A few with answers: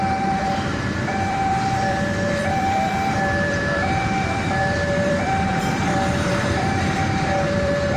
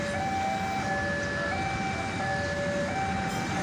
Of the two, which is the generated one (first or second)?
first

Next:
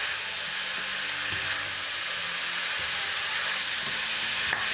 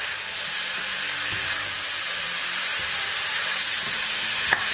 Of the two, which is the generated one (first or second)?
second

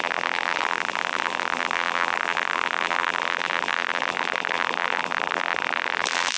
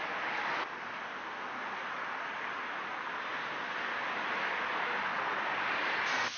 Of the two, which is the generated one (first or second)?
first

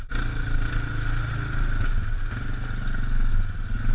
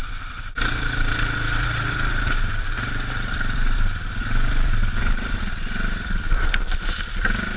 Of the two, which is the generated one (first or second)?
second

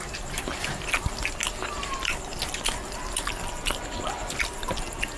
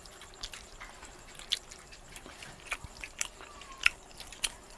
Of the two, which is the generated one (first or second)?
second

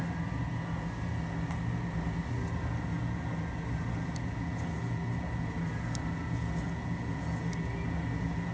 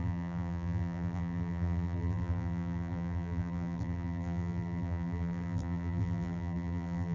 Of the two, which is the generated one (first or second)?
second